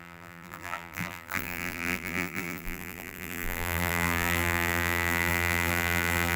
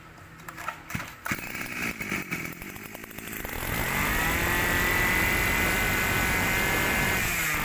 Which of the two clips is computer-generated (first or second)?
first